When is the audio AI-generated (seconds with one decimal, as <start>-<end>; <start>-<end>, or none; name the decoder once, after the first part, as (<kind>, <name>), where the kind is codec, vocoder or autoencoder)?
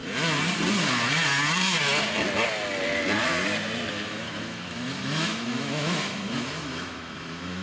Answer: 3.9-7.6 (autoencoder, DAC-VAE)